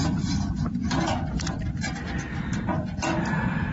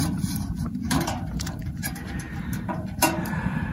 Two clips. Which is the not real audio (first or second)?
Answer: second